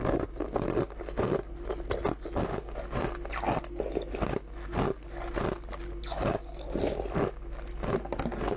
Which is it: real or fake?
real